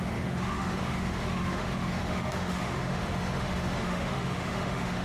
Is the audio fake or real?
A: fake